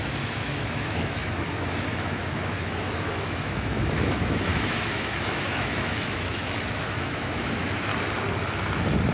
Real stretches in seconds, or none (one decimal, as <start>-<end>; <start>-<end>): 7.9-9.1